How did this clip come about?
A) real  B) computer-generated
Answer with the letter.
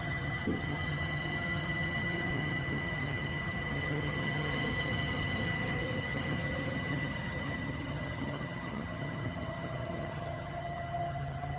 B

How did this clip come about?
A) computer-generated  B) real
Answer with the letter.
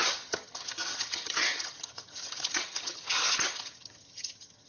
A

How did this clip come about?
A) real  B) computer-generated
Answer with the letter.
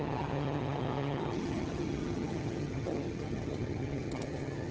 B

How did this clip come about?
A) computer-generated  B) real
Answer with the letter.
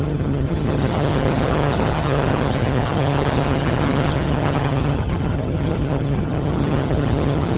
A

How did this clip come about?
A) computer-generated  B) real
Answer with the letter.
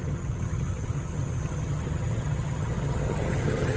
A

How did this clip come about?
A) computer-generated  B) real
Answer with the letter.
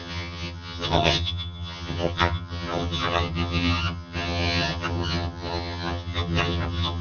A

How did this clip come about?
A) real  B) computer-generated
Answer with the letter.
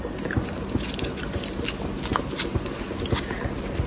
A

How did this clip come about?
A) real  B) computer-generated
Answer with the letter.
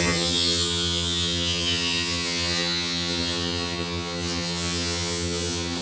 B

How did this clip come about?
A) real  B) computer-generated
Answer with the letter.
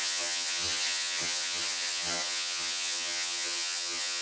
B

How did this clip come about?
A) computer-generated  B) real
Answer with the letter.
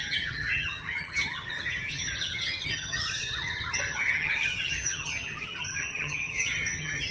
A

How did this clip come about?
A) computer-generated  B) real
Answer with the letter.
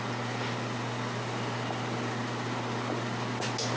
B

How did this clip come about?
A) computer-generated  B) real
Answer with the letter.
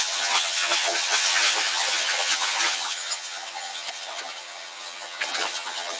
A